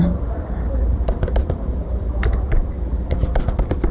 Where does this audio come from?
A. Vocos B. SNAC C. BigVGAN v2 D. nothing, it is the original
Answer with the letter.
D